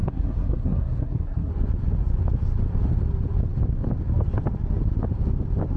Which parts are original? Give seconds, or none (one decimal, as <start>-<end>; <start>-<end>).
1.5-5.8